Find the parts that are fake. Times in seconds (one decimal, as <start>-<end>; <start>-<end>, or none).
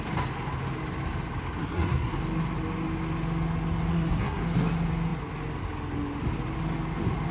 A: 1.6-2.2; 3.9-4.4